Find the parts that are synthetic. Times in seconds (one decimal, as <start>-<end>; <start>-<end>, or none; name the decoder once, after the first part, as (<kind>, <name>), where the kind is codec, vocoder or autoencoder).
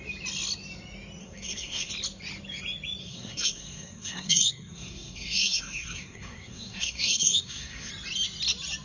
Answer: 1.2-1.9 (codec, SNAC); 3.0-7.9